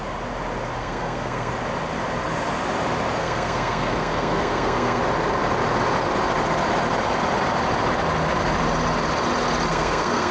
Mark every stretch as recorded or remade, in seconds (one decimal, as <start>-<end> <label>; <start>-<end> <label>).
0.0-0.8 recorded; 0.8-1.5 remade; 1.5-3.2 recorded; 3.2-5.0 remade; 5.0-9.7 recorded; 9.7-10.3 remade

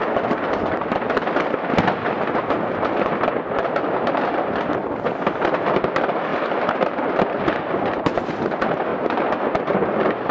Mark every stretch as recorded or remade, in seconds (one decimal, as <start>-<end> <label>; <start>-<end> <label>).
0.0-10.3 recorded

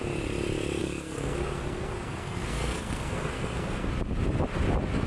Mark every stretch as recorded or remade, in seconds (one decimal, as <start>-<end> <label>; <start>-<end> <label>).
0.0-0.8 recorded; 0.8-3.9 remade; 3.9-5.1 recorded

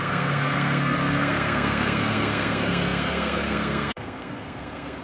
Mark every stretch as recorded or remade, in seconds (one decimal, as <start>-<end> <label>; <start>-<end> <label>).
0.0-5.0 remade

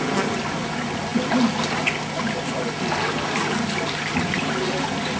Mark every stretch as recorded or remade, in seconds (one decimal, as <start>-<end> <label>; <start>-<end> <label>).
0.0-5.2 recorded